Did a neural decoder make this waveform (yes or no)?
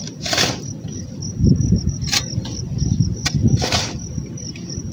no